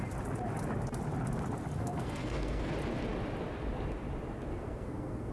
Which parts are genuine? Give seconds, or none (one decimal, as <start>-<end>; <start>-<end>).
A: 0.0-1.8; 2.7-4.5